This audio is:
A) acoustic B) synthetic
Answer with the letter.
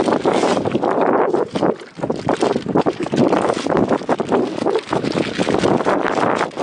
A